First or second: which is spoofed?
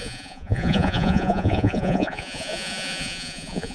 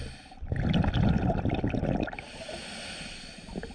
first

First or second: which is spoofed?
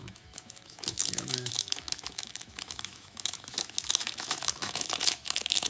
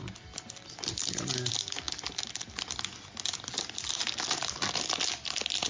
first